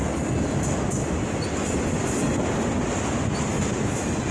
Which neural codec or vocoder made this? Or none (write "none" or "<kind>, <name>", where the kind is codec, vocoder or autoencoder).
none